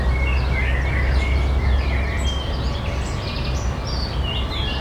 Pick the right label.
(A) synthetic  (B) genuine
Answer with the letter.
B